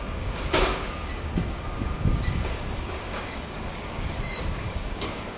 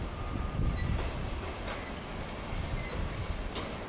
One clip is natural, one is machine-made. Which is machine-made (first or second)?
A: first